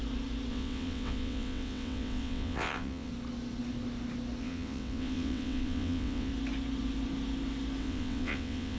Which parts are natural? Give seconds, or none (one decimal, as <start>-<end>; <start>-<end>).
0.0-0.5; 3.1-4.4; 6.3-7.8